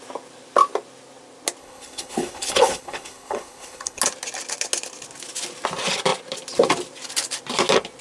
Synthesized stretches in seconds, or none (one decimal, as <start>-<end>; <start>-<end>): 1.6-4.0